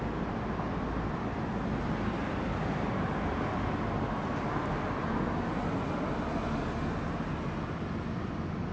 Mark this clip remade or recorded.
recorded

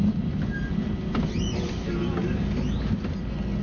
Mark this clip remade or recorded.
recorded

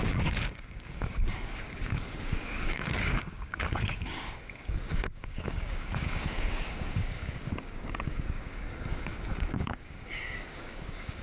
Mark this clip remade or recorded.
remade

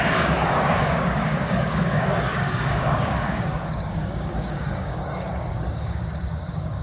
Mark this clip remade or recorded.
remade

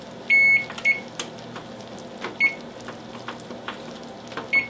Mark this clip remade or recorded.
recorded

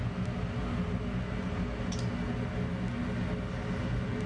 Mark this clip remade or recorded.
recorded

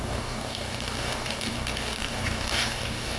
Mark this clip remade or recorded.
remade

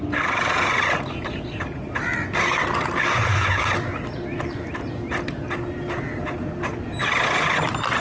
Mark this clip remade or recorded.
recorded